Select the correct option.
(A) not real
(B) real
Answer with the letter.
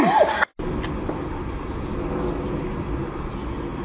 B